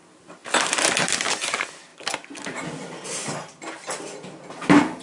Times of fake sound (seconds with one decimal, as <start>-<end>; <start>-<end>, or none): none